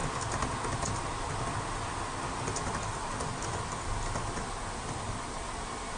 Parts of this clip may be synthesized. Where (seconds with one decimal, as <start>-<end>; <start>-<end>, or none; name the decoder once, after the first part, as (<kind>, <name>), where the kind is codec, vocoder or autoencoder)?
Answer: none